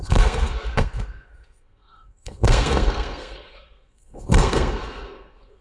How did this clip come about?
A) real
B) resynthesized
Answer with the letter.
B